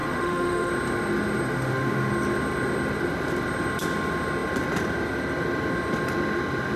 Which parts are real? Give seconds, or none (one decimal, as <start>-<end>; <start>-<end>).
0.7-1.5; 2.1-6.8